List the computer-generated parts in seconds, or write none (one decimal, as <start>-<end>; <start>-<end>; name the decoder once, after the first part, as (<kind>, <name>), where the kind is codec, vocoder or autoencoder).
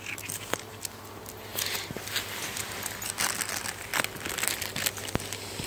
none